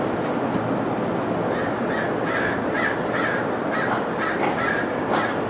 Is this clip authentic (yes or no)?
yes